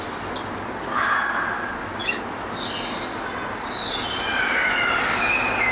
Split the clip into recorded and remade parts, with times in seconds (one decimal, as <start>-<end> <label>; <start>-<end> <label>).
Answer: 0.0-5.7 recorded